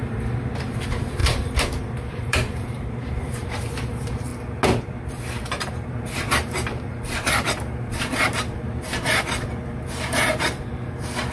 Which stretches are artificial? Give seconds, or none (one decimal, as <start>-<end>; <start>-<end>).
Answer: 0.0-4.3; 5.1-11.3